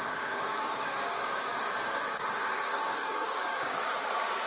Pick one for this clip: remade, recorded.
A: remade